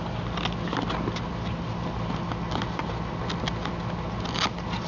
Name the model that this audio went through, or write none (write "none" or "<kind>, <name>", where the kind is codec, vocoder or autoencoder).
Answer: none